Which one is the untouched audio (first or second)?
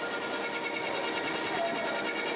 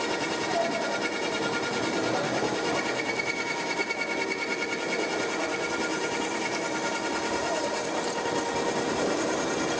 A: first